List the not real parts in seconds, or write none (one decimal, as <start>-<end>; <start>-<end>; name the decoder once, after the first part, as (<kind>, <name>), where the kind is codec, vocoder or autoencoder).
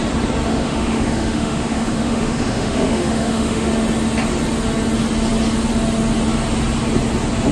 0.5-3.7 (autoencoder, DAC-VAE)